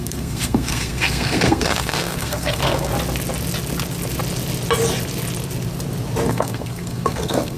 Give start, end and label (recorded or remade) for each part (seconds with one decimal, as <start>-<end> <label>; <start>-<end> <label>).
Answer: 0.0-2.9 remade; 2.9-6.3 recorded; 6.3-7.6 remade